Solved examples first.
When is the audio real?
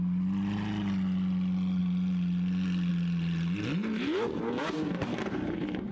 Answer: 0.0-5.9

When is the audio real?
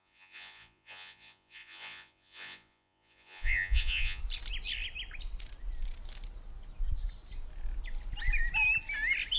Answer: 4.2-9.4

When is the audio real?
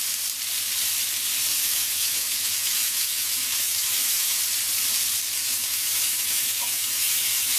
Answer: 0.0-1.5; 4.4-5.4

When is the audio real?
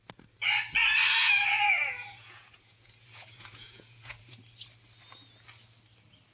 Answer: 0.0-1.2; 4.4-6.3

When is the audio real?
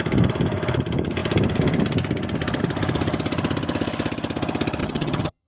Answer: 0.0-4.8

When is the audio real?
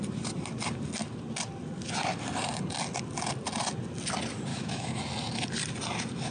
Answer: 0.0-4.5; 5.0-6.3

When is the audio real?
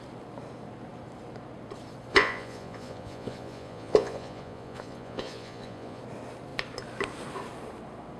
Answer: 0.0-2.1; 6.0-8.2